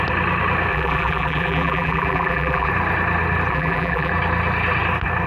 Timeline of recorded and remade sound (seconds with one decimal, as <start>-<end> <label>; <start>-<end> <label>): 0.0-0.7 recorded; 0.7-2.7 remade; 2.7-3.5 recorded; 3.5-4.1 remade; 4.1-5.3 recorded